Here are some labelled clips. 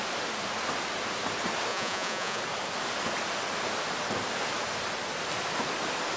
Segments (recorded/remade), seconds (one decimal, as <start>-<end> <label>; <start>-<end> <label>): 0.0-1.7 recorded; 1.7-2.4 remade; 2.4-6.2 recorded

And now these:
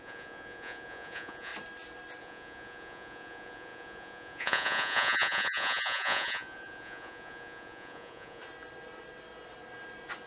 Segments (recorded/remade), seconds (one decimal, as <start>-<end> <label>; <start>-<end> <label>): 0.0-1.5 remade; 1.5-2.2 recorded; 2.2-8.4 remade; 8.4-10.3 recorded

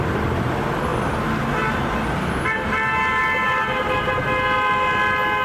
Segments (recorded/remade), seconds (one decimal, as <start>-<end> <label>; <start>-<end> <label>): 0.0-5.4 recorded